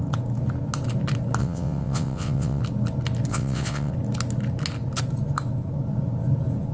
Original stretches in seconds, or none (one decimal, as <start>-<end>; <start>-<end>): 0.0-1.4; 2.6-3.3; 3.9-6.7